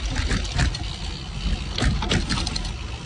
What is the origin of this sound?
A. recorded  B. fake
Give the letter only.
A